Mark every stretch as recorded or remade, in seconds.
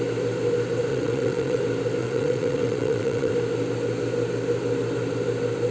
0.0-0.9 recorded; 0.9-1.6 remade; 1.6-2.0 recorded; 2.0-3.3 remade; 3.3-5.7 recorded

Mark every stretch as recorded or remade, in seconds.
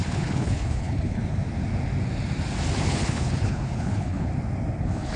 0.0-1.2 remade; 1.2-2.9 recorded; 2.9-4.3 remade; 4.3-4.8 recorded; 4.8-5.2 remade